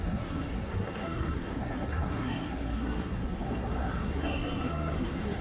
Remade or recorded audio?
remade